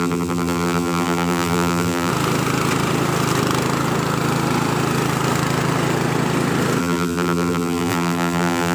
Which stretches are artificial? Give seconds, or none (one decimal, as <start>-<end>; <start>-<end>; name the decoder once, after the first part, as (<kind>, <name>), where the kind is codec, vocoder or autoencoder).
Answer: 0.0-2.1 (vocoder, BigVGAN v2); 6.8-8.7